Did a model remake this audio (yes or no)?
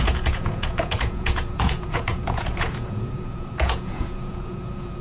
yes